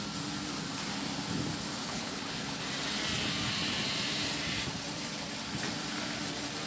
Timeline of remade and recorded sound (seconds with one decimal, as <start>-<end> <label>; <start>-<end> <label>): 0.0-1.8 recorded; 1.8-2.6 remade; 2.6-6.7 recorded